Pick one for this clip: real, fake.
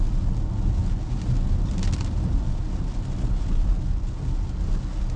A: real